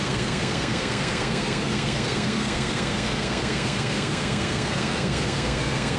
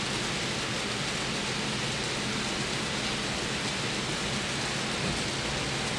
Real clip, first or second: second